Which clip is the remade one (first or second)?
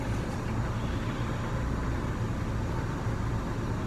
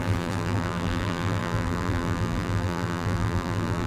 second